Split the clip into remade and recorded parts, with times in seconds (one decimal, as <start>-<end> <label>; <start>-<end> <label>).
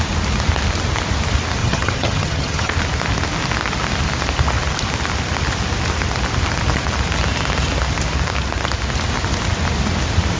0.0-1.6 recorded; 1.6-2.7 remade; 2.7-10.4 recorded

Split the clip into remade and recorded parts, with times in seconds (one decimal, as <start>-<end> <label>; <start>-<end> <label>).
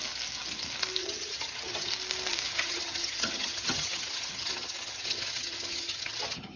0.0-1.0 recorded; 1.0-1.9 remade; 1.9-2.5 recorded; 2.5-6.6 remade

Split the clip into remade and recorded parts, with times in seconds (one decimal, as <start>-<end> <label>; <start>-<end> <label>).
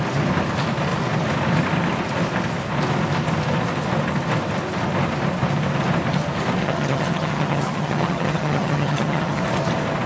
0.0-6.6 recorded; 6.6-9.4 remade; 9.4-10.1 recorded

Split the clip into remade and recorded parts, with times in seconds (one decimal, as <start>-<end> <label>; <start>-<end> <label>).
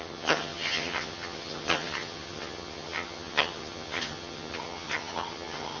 0.0-5.8 remade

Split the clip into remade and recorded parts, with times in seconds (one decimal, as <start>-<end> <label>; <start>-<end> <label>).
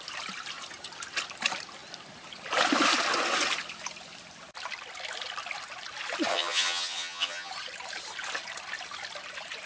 0.0-6.3 recorded; 6.3-7.5 remade; 7.5-9.7 recorded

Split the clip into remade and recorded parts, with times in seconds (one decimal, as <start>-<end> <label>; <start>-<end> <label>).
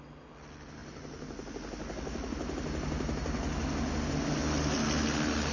0.0-5.5 recorded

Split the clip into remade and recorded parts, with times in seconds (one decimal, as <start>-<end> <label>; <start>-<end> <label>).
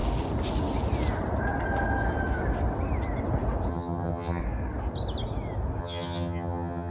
0.0-3.7 recorded; 3.7-4.4 remade; 4.4-5.8 recorded; 5.8-6.9 remade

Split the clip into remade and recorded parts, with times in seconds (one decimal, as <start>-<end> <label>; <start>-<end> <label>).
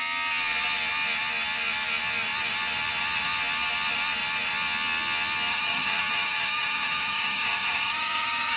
0.0-5.5 recorded; 5.5-8.6 remade